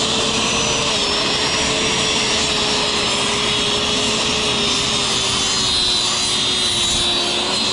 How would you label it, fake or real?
real